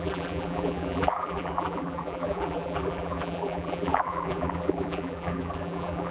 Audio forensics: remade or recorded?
remade